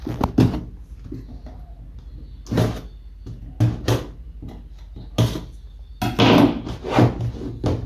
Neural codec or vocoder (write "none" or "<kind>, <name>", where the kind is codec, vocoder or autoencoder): none